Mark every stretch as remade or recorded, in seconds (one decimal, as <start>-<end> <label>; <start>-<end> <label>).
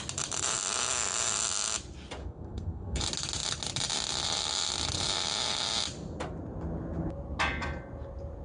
0.0-2.2 recorded; 2.2-3.0 remade; 3.0-8.4 recorded